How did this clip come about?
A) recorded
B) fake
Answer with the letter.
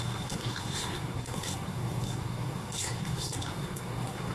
B